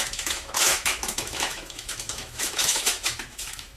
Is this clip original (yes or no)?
no